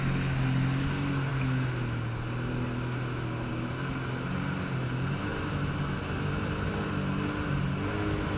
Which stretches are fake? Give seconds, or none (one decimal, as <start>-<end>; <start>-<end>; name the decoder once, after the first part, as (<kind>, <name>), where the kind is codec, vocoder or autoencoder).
none

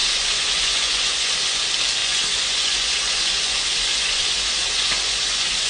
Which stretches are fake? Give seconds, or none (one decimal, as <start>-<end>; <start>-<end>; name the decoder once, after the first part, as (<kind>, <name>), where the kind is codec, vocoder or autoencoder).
0.0-1.6 (vocoder, Vocos); 2.0-5.7

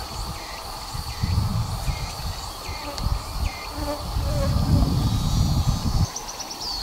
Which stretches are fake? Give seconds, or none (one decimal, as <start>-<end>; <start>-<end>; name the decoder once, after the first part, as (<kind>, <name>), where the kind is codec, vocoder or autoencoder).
none

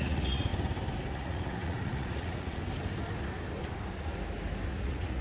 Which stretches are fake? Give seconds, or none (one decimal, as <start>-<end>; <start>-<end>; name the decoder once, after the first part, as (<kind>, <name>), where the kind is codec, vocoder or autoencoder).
0.0-0.5 (vocoder, Vocos); 1.1-2.6; 4.7-5.2

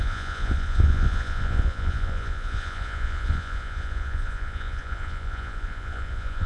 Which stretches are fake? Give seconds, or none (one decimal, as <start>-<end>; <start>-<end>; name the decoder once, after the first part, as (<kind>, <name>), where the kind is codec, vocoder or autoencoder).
0.0-6.5 (vocoder, Vocos)

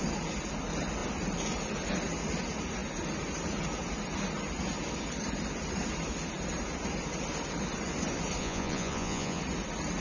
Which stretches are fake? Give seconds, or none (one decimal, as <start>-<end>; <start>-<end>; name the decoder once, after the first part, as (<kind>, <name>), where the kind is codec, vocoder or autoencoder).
8.4-9.4 (vocoder, Vocos)

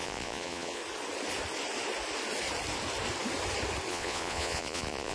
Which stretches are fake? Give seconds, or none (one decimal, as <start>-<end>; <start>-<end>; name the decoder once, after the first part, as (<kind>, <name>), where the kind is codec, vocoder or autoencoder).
0.0-0.8 (vocoder, Vocos); 3.9-5.1

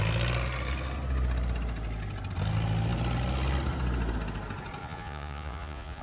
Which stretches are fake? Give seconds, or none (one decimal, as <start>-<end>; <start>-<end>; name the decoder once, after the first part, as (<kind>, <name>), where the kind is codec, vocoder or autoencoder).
4.8-6.0 (vocoder, Vocos)